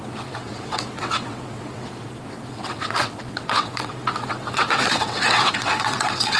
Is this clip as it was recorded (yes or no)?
no